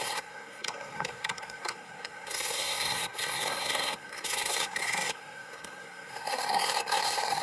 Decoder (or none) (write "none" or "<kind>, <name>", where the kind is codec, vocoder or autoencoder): codec, SNAC